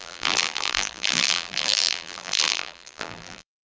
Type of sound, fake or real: fake